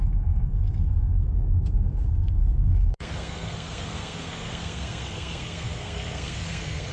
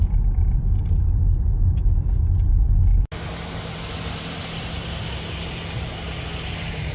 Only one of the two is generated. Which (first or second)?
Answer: first